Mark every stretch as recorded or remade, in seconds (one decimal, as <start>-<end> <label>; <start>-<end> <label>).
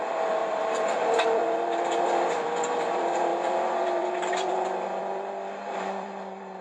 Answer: 0.0-6.6 remade